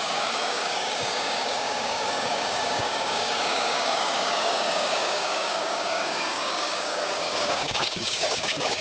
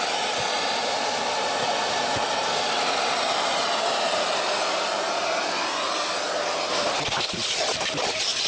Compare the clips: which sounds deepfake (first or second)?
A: first